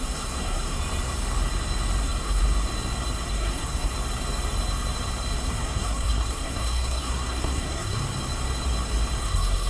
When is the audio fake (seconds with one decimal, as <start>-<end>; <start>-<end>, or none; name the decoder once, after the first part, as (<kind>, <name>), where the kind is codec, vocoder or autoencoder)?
0.0-0.8 (codec, SNAC); 2.0-2.4; 3.3-3.9; 5.4-8.0; 9.2-9.7